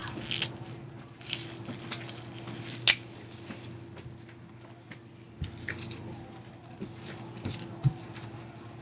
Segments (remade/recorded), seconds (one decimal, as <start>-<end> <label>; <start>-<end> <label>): 0.0-8.8 recorded